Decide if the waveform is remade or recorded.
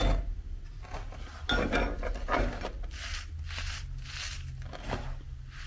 recorded